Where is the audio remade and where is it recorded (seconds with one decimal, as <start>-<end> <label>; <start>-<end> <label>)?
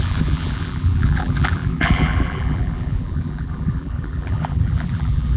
0.0-5.4 remade